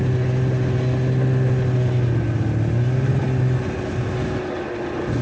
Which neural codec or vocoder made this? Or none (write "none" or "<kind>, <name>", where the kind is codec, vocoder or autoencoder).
none